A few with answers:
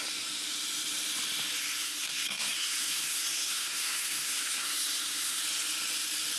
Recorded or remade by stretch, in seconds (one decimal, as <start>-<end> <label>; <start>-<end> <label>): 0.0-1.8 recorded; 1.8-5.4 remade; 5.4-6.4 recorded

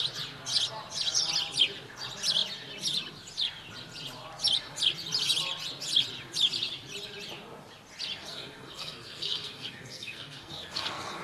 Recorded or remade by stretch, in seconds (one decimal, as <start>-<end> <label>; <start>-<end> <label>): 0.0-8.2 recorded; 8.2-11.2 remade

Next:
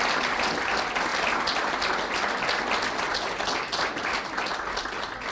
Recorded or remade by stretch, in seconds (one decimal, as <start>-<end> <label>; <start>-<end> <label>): 0.0-5.3 recorded